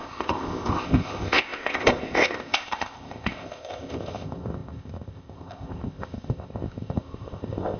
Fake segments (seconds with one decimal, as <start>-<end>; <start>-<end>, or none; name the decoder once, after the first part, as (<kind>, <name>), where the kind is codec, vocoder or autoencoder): 0.0-7.8 (codec, ZipCodec)